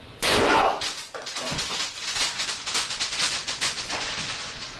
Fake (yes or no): yes